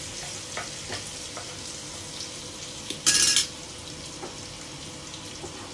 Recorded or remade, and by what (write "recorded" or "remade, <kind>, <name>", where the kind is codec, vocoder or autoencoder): recorded